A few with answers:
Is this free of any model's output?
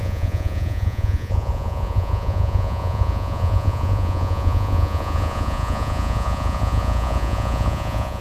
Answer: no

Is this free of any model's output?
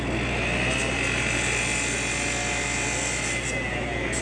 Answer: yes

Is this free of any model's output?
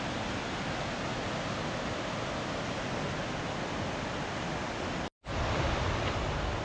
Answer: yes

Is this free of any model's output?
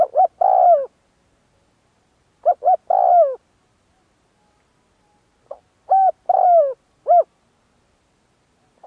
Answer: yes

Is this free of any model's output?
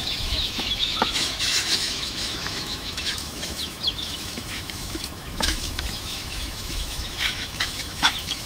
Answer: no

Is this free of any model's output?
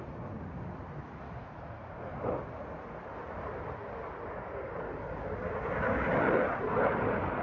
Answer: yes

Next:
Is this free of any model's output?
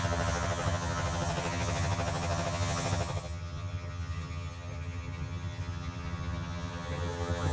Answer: no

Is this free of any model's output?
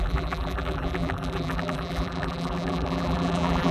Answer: no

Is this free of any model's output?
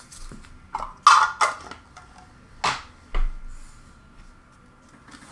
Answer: yes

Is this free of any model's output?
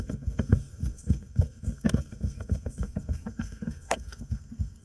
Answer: no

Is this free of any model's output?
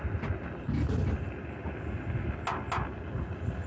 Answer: yes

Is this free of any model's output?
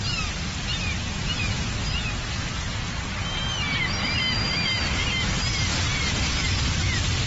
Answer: yes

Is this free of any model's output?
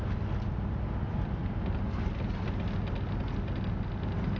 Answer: yes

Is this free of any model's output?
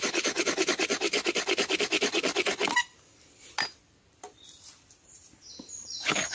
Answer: yes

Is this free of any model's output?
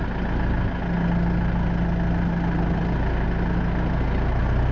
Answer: yes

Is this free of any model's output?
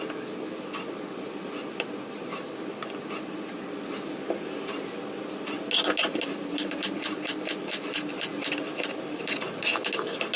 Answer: yes